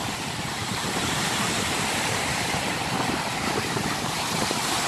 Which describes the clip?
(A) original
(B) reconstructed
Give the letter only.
B